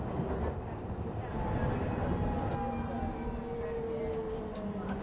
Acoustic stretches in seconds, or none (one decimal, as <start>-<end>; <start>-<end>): 0.0-5.0